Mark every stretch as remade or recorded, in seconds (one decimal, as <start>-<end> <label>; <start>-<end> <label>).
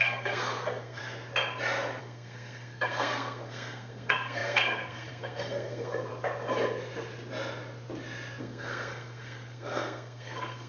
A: 0.0-1.0 remade; 1.0-2.0 recorded; 2.0-6.1 remade; 6.1-8.4 recorded; 8.4-10.7 remade